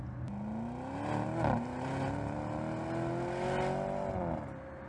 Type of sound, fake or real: real